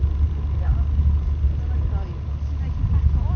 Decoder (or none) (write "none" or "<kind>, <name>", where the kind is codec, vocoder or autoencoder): none